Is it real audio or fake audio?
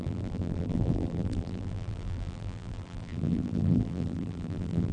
fake